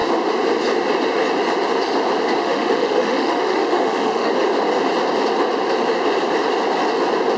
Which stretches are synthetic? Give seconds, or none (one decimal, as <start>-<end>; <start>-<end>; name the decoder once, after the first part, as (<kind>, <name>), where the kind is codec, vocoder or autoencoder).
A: 2.4-4.3 (autoencoder, DAC-VAE)